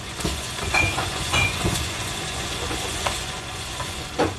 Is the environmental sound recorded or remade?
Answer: remade